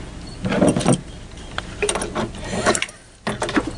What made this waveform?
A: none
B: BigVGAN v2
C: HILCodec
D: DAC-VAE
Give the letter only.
A